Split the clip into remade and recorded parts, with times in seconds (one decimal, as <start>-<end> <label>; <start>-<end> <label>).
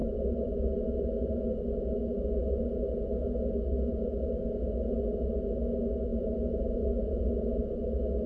0.0-6.1 recorded; 6.1-7.6 remade; 7.6-8.3 recorded